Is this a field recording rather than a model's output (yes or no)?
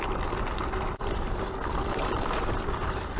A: yes